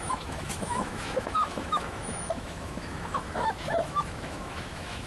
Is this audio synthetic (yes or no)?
yes